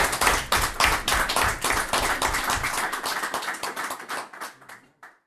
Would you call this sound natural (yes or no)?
yes